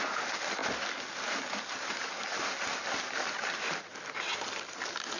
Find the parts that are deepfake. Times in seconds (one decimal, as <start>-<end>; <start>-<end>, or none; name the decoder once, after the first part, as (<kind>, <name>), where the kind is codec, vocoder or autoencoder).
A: none